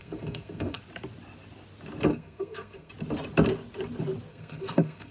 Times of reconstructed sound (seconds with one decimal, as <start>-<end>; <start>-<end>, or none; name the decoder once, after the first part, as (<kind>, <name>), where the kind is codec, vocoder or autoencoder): 0.0-0.8 (codec, SNAC); 2.1-2.9; 4.3-5.1